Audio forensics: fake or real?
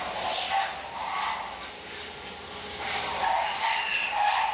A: real